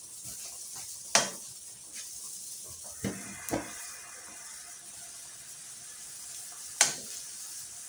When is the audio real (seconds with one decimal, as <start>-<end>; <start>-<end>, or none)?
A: 0.0-7.9